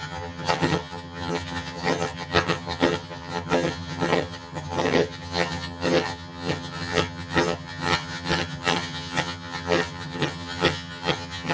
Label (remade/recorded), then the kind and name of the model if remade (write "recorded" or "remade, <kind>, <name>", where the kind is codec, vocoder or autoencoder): remade, vocoder, HiFi-GAN